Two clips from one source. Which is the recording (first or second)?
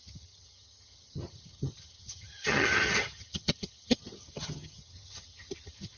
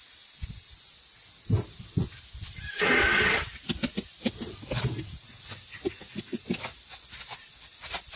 second